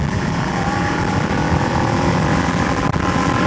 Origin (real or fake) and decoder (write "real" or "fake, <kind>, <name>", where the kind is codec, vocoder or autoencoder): fake, vocoder, BigVGAN v2